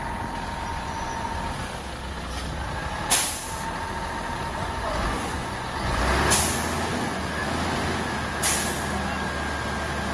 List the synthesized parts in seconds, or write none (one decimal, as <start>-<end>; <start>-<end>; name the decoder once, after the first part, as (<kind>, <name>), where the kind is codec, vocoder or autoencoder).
0.7-1.4 (vocoder, Vocos); 4.5-6.0; 6.9-7.5